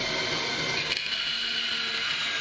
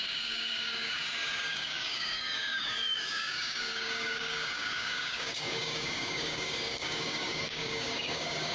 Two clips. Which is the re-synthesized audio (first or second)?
second